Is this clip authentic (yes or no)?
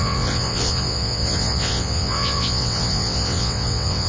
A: no